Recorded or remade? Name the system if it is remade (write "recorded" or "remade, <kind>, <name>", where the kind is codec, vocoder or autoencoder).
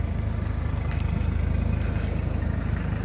recorded